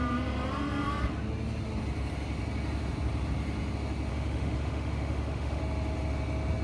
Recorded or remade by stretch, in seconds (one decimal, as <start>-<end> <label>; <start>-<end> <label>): 0.0-4.1 recorded; 4.1-5.6 remade; 5.6-6.6 recorded

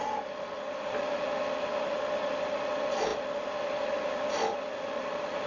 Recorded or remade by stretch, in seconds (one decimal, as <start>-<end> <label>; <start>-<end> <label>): 0.0-5.5 recorded